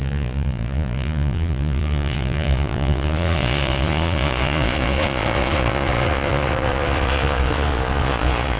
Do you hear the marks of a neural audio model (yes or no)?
yes